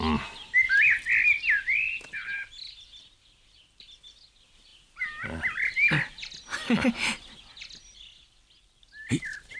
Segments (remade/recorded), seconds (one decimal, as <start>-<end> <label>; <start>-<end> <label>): 0.0-9.6 recorded